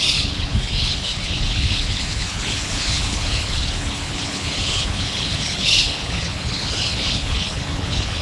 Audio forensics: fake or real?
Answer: fake